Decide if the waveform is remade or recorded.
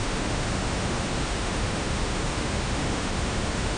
remade